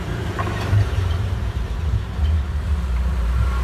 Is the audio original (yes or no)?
no